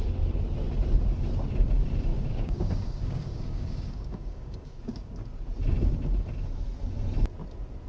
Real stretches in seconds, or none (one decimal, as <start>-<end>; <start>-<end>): 0.0-2.1; 5.1-7.9